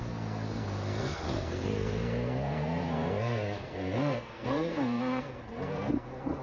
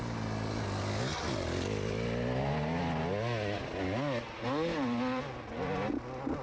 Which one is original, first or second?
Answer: second